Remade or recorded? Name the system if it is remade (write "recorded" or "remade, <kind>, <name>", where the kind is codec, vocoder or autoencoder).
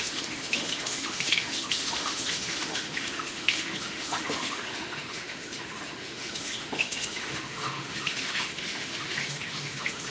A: remade, autoencoder, DAC-VAE